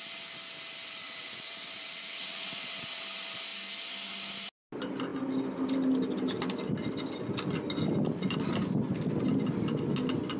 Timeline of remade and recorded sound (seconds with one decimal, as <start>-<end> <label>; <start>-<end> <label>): 0.0-1.0 recorded; 1.0-3.0 remade; 3.0-10.4 recorded